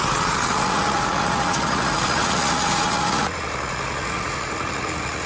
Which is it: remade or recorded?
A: remade